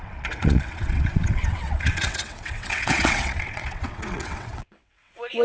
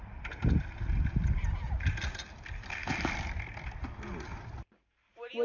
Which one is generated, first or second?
first